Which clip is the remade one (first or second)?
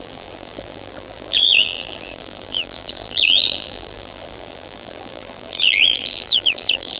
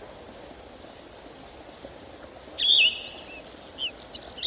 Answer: first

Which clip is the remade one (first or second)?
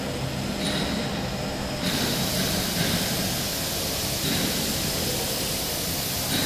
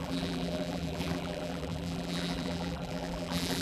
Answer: second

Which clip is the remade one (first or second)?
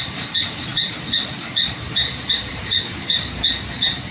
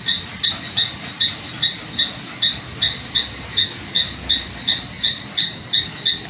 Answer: first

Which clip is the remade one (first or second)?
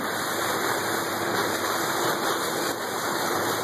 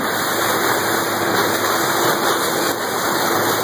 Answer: first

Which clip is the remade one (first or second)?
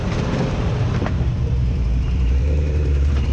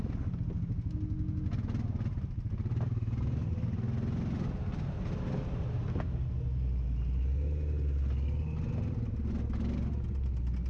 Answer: first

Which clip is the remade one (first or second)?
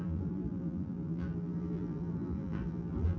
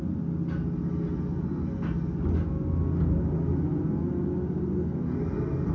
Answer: first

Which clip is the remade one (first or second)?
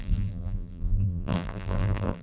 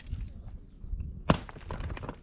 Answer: first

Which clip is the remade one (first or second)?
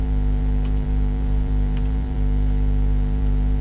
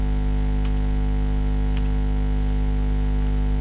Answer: first